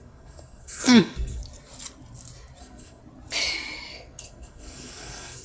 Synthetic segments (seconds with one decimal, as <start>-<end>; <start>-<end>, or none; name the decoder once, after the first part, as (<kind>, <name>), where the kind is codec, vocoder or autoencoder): 0.0-1.4 (codec, SNAC); 2.6-3.0; 3.9-5.4